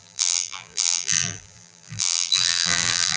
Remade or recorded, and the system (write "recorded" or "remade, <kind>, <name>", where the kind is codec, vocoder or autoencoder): remade, vocoder, BigVGAN v2